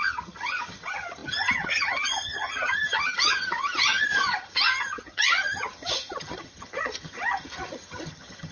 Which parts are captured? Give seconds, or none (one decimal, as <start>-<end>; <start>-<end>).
none